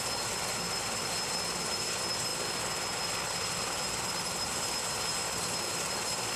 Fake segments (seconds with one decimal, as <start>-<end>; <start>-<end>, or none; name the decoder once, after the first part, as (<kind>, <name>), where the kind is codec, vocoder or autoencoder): none